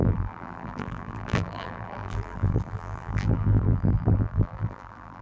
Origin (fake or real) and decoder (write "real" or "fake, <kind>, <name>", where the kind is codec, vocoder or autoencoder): fake, vocoder, BigVGAN v2